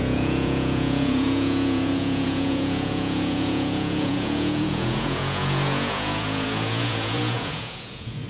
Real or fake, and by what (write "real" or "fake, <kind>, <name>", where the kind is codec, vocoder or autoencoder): fake, vocoder, Vocos